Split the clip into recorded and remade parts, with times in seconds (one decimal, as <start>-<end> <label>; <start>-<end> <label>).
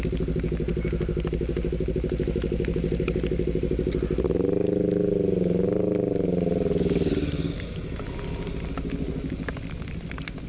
0.0-10.5 recorded